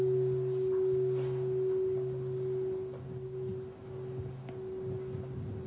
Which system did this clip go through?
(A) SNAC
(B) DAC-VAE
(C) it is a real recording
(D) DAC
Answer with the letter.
C